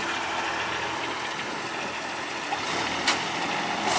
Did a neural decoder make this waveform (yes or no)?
no